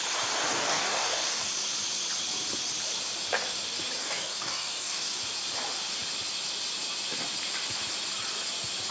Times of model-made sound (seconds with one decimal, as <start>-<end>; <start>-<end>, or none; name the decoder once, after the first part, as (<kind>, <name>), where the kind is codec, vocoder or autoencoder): 0.5-1.5 (codec, DAC); 4.0-5.2